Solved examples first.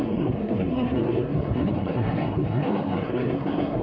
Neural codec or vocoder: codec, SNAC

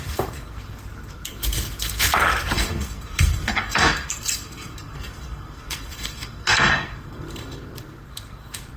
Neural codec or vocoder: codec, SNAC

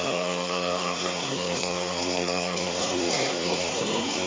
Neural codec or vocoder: codec, SNAC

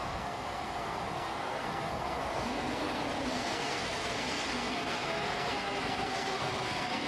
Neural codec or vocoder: codec, SNAC